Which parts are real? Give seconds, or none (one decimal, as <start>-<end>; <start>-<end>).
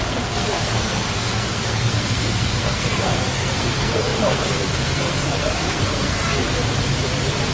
6.4-7.5